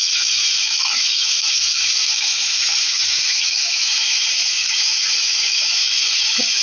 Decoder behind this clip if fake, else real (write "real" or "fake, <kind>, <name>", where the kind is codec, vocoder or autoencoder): fake, autoencoder, DAC-VAE